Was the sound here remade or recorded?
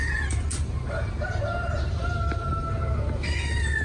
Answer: recorded